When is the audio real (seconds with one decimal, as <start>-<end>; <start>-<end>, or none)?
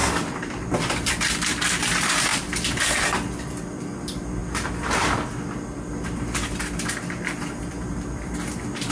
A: 4.4-7.6